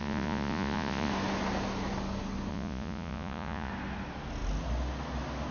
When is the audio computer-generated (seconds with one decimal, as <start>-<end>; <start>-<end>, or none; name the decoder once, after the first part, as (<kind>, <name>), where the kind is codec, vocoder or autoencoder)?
0.0-1.1 (vocoder, Vocos); 2.5-3.7